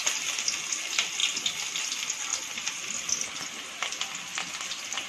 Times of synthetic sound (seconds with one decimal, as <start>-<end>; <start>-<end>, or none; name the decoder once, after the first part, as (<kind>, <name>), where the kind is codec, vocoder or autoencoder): none